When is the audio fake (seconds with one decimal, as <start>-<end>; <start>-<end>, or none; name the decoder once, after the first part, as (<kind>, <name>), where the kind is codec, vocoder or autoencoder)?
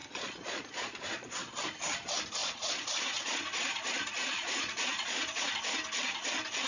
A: 0.0-1.4 (vocoder, Vocos); 2.4-5.5